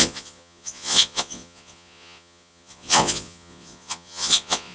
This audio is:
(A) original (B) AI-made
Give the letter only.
B